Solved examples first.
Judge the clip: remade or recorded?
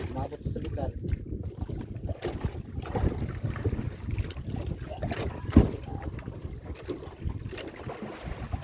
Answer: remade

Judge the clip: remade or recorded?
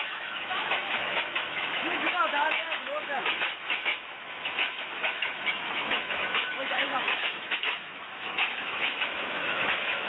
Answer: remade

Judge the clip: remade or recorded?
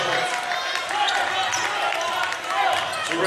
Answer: recorded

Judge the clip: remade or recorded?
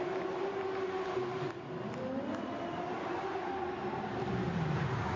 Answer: recorded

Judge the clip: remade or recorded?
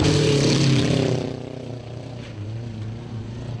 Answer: remade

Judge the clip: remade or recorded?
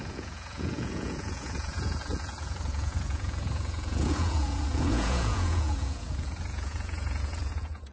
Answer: remade